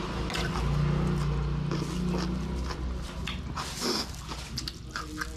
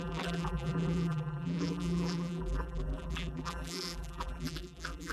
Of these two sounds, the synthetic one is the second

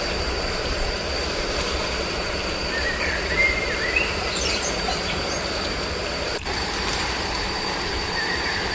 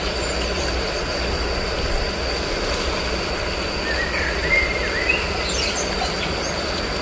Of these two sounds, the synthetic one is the first